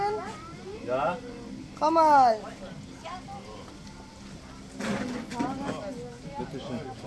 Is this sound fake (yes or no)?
no